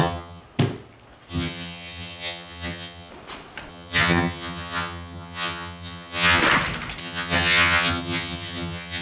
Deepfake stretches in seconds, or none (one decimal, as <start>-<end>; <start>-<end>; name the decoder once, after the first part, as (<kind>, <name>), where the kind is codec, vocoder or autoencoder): 0.0-0.4 (vocoder, HiFi-GAN); 1.3-3.1; 3.7-6.4; 7.0-9.0